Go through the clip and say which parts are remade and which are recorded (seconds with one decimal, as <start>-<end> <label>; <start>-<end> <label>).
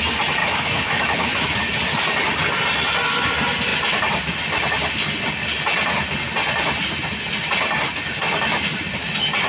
0.0-0.4 recorded; 0.4-1.6 remade; 1.6-9.5 recorded